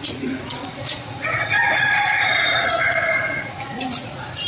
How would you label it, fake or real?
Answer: fake